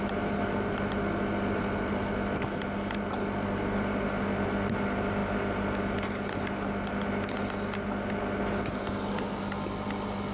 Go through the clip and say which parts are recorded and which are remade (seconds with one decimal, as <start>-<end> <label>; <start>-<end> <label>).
0.0-10.3 recorded